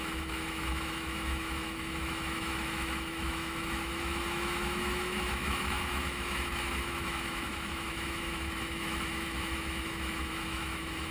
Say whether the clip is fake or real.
fake